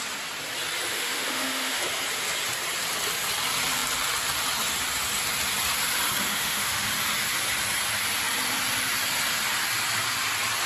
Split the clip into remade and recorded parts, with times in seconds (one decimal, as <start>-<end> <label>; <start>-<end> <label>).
0.0-0.9 recorded; 0.9-1.8 remade; 1.8-6.3 recorded; 6.3-6.9 remade; 6.9-10.7 recorded